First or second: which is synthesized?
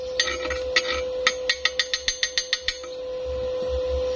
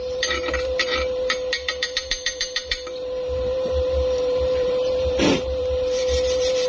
second